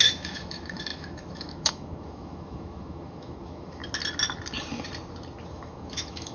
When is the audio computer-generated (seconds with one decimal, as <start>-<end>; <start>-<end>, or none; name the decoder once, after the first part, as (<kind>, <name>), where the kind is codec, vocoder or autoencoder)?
0.0-3.8 (autoencoder, DAC-VAE); 5.5-6.3